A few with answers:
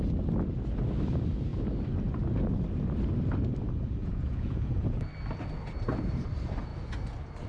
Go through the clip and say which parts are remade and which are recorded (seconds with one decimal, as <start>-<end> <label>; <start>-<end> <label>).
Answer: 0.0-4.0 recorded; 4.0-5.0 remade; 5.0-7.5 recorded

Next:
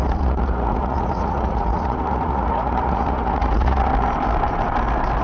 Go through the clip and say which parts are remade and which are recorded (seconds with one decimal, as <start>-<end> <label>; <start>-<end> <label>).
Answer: 0.0-3.9 remade; 3.9-5.2 recorded

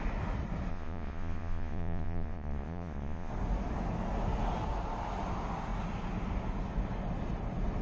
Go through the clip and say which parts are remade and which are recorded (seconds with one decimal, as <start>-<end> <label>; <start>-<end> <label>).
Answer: 0.0-0.7 recorded; 0.7-3.3 remade; 3.3-7.8 recorded

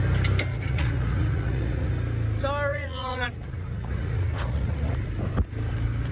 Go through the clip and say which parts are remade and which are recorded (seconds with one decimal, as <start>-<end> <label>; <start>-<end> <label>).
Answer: 0.0-0.5 recorded; 0.5-1.9 remade; 1.9-2.7 recorded; 2.7-5.0 remade; 5.0-6.1 recorded

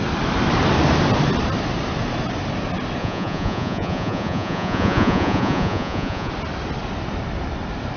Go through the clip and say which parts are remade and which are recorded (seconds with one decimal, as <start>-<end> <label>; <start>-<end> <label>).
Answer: 0.0-3.0 recorded; 3.0-6.3 remade; 6.3-8.0 recorded

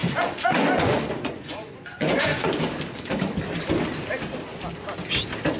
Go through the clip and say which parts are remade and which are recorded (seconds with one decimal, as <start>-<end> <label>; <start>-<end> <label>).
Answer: 0.0-2.5 remade; 2.5-5.6 recorded

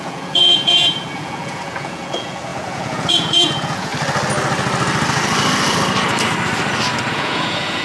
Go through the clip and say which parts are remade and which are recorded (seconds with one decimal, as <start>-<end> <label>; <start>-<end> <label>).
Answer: 0.0-3.9 remade; 3.9-7.1 recorded; 7.1-7.8 remade